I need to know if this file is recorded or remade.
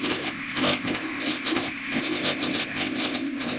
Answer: remade